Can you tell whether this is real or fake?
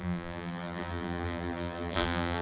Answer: fake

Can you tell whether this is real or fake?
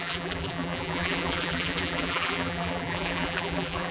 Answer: fake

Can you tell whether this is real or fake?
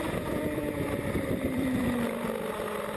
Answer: fake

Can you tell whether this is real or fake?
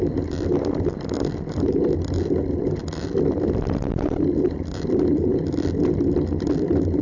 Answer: fake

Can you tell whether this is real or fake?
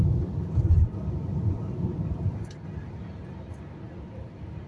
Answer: fake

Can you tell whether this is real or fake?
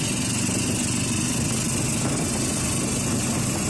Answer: real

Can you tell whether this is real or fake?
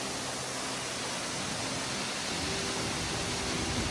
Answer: real